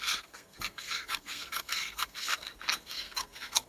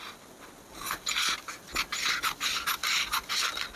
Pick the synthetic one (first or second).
first